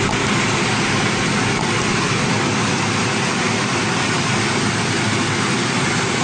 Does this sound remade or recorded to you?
recorded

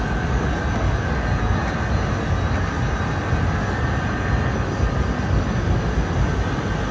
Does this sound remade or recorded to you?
recorded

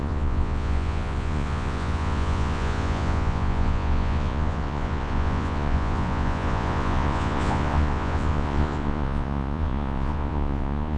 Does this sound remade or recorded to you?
remade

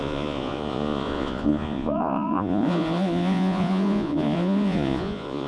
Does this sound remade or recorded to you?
remade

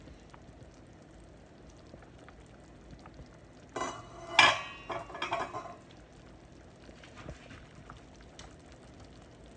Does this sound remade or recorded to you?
recorded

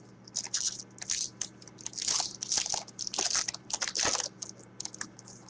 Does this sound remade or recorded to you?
recorded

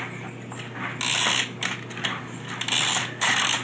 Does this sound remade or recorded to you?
recorded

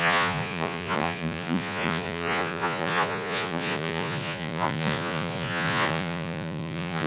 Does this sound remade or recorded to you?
remade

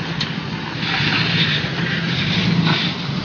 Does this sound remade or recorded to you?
recorded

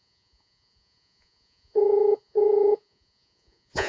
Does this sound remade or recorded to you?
remade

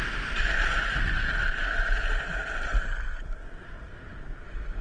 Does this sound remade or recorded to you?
recorded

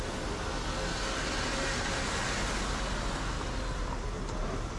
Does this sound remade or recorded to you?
recorded